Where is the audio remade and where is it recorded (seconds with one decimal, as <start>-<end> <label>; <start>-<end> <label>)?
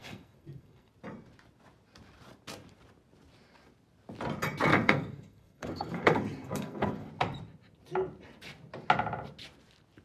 0.0-0.9 remade; 0.9-4.7 recorded; 4.7-7.1 remade; 7.1-10.0 recorded